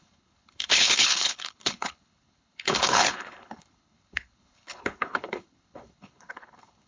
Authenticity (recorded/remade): remade